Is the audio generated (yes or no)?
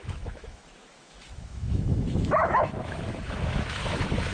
yes